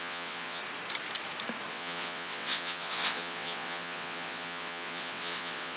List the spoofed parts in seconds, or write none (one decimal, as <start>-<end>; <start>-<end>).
0.0-0.6; 1.7-5.8